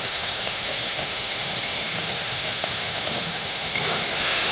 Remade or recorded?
remade